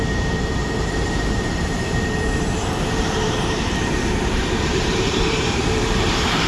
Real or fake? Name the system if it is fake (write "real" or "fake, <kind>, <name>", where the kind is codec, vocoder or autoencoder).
fake, vocoder, BigVGAN v2